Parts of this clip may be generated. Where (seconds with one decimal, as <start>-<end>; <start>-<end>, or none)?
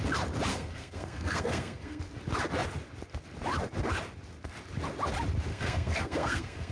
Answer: 0.5-2.0; 5.5-6.7